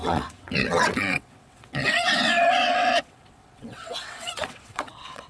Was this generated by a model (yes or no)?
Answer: yes